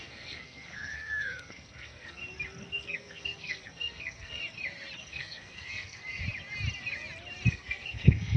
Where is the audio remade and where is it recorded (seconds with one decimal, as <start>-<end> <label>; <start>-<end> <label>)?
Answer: 0.0-2.2 remade; 2.2-2.7 recorded; 2.7-4.4 remade; 4.4-5.0 recorded; 5.0-6.2 remade; 6.2-7.5 recorded; 7.5-8.4 remade